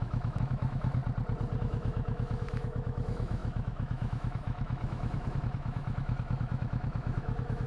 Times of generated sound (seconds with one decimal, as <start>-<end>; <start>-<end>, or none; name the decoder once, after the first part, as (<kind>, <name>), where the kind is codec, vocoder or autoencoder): 0.0-1.0 (autoencoder, DAC-VAE); 1.6-7.7